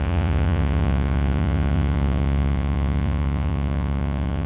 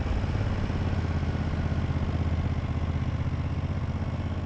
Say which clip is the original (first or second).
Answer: second